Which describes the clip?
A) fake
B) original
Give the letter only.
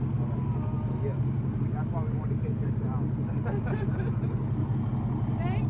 B